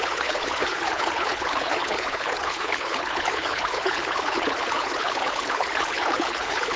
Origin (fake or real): fake